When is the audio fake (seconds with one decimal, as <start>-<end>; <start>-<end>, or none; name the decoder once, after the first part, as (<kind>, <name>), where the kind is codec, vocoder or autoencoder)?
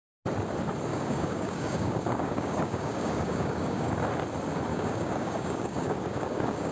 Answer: 0.9-3.9 (codec, DAC); 4.7-6.7